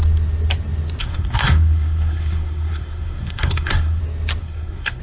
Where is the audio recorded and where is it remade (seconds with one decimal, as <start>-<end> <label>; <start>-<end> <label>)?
0.0-1.0 recorded; 1.0-4.0 remade; 4.0-4.4 recorded; 4.4-5.0 remade